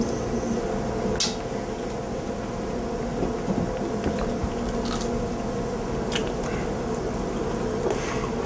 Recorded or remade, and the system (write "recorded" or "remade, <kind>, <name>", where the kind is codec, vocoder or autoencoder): recorded